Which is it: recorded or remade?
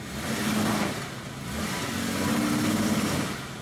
recorded